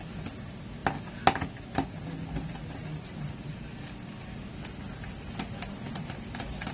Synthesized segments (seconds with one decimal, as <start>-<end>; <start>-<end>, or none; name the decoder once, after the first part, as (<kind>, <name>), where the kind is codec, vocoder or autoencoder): 2.8-6.7 (vocoder, BigVGAN v2)